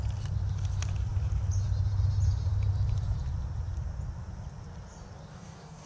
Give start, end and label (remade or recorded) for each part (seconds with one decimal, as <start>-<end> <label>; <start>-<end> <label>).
0.0-5.3 recorded; 5.3-5.9 remade